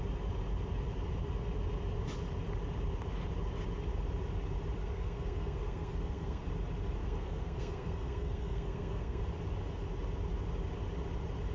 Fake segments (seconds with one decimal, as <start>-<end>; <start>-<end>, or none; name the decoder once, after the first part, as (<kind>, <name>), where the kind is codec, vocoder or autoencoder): 4.8-6.4 (codec, SNAC); 7.0-9.2